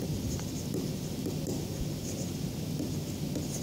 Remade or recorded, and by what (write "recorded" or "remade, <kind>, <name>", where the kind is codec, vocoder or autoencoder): recorded